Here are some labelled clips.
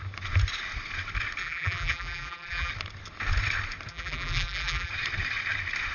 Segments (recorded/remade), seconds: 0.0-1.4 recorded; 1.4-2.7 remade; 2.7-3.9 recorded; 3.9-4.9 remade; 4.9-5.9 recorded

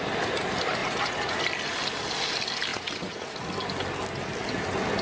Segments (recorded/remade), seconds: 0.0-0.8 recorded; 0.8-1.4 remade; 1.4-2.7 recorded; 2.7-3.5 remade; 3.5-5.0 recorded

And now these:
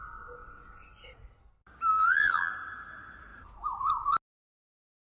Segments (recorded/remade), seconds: 0.0-1.9 recorded; 1.9-2.5 remade; 2.5-5.1 recorded

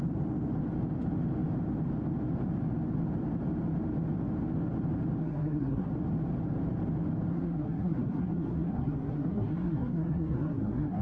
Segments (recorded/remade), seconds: 0.0-5.2 recorded; 5.2-5.9 remade; 5.9-7.3 recorded; 7.3-11.0 remade